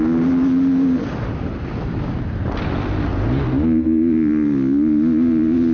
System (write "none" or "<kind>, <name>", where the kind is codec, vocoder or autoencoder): none